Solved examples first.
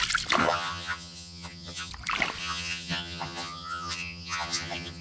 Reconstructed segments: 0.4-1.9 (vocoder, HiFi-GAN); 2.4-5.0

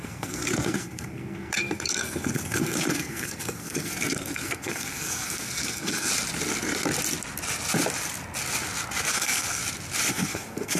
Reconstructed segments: 0.0-6.1 (codec, SNAC); 9.1-9.6; 10.1-10.8

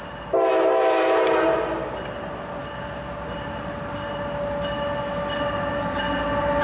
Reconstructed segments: none

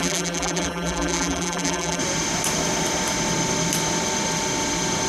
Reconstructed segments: 0.0-2.0 (vocoder, BigVGAN v2)